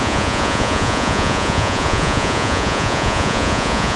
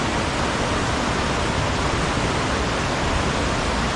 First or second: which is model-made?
first